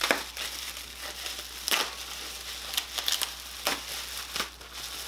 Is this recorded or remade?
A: recorded